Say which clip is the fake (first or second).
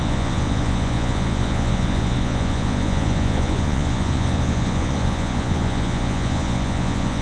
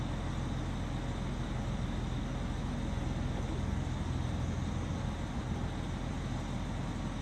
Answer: first